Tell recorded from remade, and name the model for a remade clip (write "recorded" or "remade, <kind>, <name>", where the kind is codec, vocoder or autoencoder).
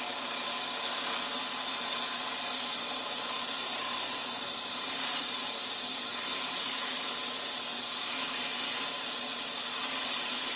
recorded